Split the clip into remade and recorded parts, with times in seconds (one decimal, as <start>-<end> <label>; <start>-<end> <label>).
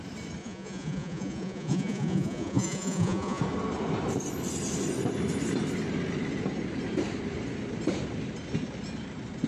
0.0-0.4 recorded; 0.4-3.4 remade; 3.4-9.5 recorded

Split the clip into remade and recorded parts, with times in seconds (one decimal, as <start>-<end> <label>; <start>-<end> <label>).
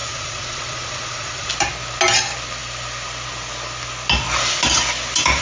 0.0-1.5 remade; 1.5-5.4 recorded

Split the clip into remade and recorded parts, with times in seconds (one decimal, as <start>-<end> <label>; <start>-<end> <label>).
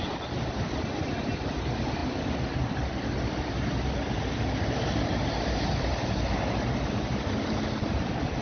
0.0-8.4 recorded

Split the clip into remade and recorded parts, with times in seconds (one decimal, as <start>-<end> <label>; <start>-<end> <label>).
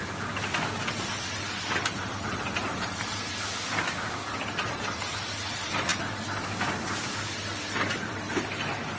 0.0-9.0 recorded